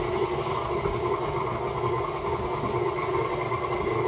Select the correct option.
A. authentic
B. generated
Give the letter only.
A